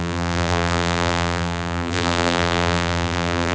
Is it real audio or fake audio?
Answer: fake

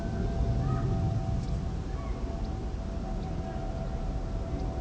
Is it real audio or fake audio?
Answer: real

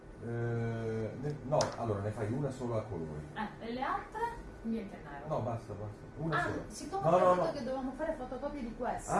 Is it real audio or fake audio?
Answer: real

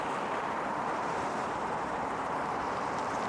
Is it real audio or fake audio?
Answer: fake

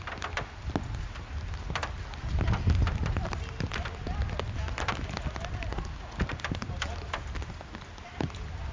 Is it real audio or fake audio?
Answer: real